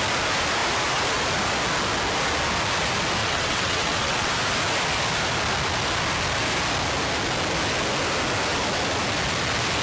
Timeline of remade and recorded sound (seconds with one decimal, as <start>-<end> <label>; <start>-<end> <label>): 0.0-3.2 recorded; 3.2-4.3 remade; 4.3-9.8 recorded